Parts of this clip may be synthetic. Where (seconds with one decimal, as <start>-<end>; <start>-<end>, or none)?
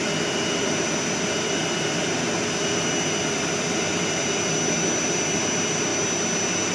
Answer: none